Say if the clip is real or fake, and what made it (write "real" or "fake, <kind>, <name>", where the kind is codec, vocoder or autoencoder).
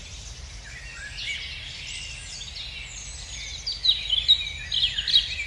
real